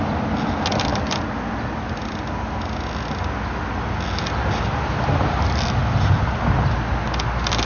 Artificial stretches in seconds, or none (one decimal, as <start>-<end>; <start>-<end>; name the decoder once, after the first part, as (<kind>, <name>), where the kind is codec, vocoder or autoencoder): none

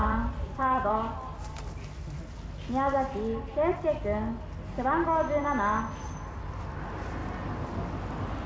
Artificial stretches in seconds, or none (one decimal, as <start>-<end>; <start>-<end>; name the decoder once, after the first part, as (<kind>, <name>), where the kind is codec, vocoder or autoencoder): 0.0-0.9 (vocoder, BigVGAN v2)

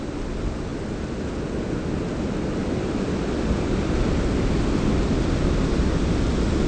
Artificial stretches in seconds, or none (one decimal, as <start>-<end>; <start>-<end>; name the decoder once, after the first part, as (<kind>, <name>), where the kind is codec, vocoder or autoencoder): none

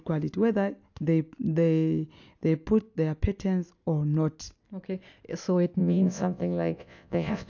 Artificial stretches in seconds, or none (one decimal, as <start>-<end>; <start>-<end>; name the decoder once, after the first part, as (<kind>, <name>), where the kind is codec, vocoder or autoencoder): 5.8-7.5 (vocoder, Vocos)

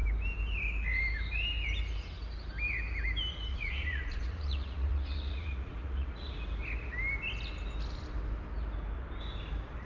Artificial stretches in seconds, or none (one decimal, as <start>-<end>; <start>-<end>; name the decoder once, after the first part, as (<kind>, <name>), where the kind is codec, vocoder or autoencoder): 3.5-6.3 (vocoder, Vocos)

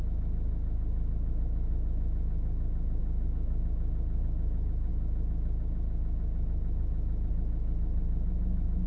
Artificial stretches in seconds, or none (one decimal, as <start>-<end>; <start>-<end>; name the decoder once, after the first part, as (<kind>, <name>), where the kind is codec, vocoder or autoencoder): none

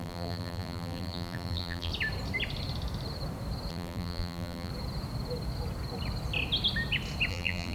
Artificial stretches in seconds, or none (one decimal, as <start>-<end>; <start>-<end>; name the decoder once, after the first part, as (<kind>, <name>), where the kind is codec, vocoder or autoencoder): 0.0-1.9 (vocoder, BigVGAN v2); 3.7-4.7; 7.3-7.7

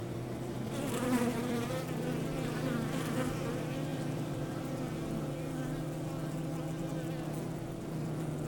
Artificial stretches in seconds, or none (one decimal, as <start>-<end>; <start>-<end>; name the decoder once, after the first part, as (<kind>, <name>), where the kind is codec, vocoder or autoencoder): 0.0-1.6 (vocoder, BigVGAN v2); 3.9-4.7